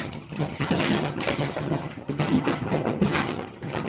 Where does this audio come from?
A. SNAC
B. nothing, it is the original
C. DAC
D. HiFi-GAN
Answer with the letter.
D